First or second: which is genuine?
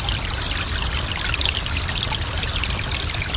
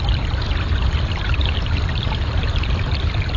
first